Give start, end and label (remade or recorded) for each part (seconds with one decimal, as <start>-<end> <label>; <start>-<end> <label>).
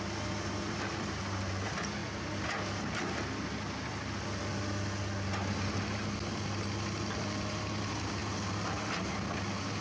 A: 0.0-9.8 recorded